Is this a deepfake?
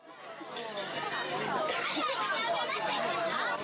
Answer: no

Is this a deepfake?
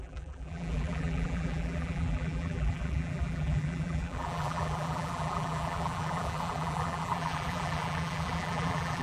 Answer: yes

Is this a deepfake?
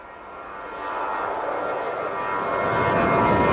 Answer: no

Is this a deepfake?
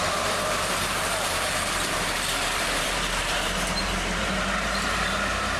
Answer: yes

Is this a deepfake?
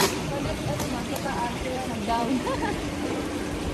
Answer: yes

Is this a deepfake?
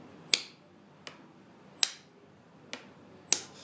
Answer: no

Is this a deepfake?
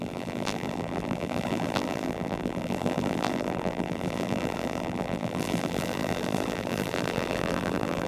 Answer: yes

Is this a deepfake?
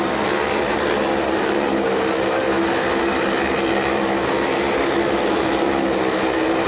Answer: no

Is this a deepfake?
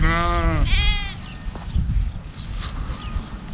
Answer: no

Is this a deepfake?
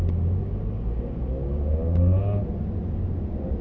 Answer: no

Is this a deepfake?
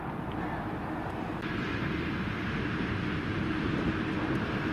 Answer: no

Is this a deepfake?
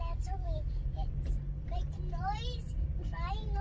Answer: yes